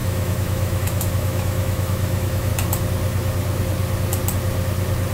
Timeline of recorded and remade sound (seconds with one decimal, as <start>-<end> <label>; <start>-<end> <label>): 0.0-2.5 remade; 2.5-5.1 recorded